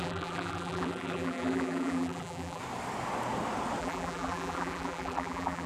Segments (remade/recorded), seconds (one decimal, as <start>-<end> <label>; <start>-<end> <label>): 0.0-2.6 remade; 2.6-3.8 recorded; 3.8-5.7 remade